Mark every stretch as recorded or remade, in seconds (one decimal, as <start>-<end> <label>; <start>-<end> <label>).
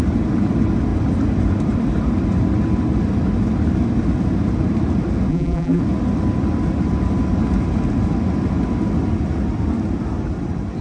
0.0-5.3 recorded; 5.3-5.8 remade; 5.8-10.8 recorded